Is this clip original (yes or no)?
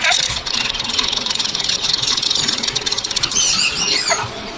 no